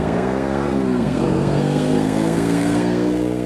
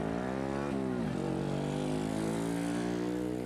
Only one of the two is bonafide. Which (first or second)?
second